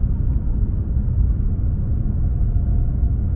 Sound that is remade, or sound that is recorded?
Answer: recorded